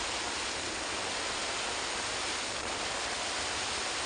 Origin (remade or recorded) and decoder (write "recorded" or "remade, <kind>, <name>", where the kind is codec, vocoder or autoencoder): remade, vocoder, BigVGAN v2